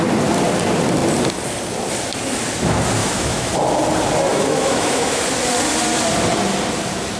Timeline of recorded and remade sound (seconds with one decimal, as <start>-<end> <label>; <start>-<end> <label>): 0.0-3.0 recorded; 3.0-3.5 remade; 3.5-4.3 recorded; 4.3-5.2 remade; 5.2-7.2 recorded